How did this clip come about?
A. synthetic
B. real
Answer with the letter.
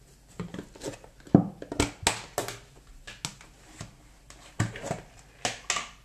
B